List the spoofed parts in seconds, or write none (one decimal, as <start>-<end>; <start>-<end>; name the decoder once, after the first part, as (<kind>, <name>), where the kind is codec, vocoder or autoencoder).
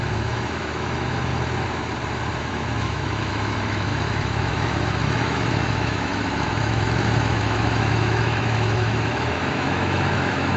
0.0-1.3 (autoencoder, DAC-VAE); 2.4-10.6